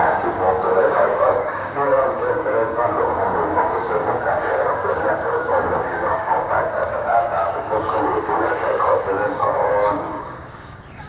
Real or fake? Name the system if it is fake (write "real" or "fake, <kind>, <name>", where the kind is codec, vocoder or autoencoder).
fake, codec, DAC